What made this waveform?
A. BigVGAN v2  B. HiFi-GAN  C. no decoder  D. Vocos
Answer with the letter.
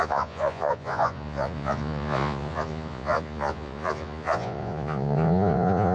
D